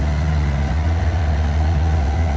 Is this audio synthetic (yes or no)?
yes